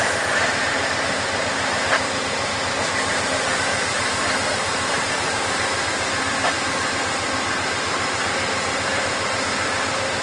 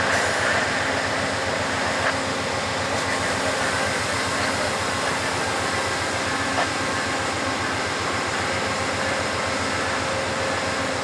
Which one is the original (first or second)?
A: second